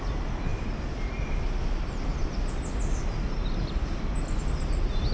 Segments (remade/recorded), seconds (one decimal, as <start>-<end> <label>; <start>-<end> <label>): 0.0-5.1 recorded